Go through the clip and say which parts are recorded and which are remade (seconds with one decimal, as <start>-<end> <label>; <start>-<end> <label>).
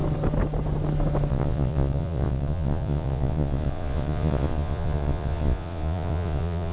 0.0-1.3 recorded; 1.3-6.7 remade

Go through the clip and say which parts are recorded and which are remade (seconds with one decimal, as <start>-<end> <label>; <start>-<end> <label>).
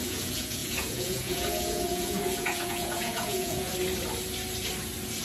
0.0-3.7 remade; 3.7-5.2 recorded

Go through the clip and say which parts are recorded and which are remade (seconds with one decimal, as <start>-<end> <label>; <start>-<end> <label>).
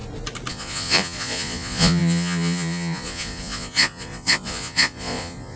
0.0-0.5 recorded; 0.5-5.6 remade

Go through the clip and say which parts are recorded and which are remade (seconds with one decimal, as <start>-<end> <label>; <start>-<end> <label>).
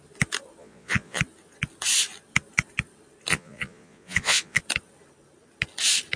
0.0-0.6 recorded; 0.6-1.2 remade; 1.2-3.3 recorded; 3.3-4.6 remade; 4.6-6.2 recorded